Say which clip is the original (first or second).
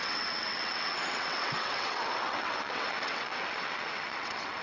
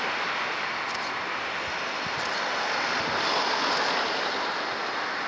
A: second